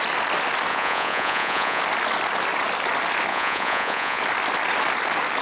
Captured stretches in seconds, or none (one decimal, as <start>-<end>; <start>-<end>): 0.0-0.7; 1.8-3.3; 4.2-5.4